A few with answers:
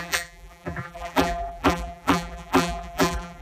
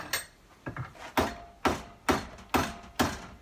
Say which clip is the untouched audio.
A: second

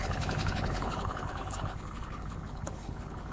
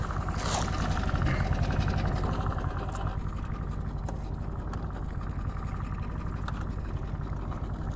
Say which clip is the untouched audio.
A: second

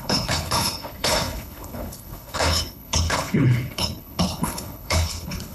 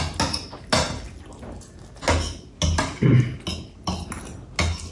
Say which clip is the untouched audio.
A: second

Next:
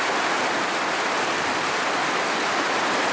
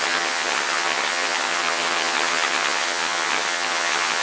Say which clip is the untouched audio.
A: first